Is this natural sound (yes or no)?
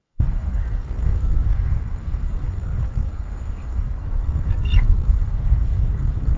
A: no